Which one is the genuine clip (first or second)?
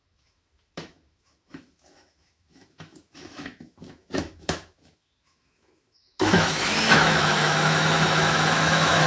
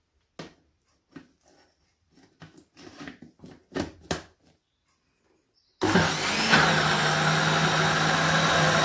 second